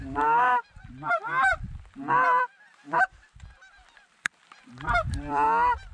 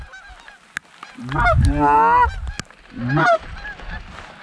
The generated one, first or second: first